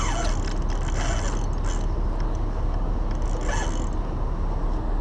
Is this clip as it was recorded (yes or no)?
yes